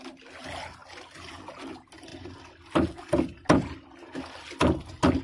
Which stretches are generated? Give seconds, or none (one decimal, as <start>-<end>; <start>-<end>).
none

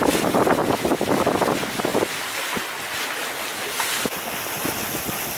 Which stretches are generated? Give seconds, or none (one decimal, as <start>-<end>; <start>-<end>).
none